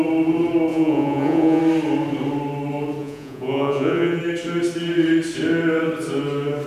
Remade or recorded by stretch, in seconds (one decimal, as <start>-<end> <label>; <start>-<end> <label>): 0.0-0.7 recorded; 0.7-1.6 remade; 1.6-3.0 recorded; 3.0-4.2 remade; 4.2-6.7 recorded